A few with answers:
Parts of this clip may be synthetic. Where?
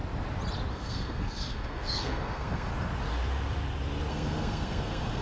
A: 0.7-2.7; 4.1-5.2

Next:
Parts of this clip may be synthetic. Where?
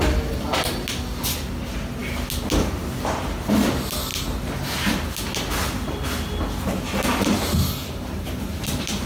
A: 4.1-5.1; 7.8-9.1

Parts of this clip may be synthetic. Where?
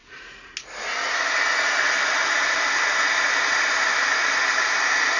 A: none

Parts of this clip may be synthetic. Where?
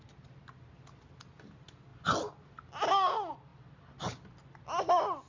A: none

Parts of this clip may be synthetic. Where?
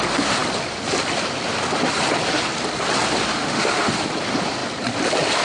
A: 3.3-3.9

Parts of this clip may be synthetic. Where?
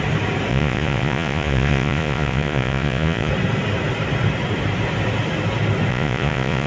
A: 0.5-3.3; 5.9-6.7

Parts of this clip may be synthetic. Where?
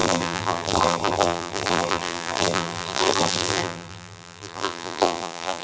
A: 0.0-5.6